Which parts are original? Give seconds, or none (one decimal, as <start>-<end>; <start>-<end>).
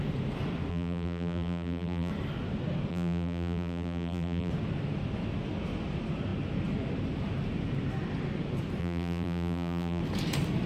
0.0-0.7; 2.1-2.9; 4.5-8.8; 10.0-10.7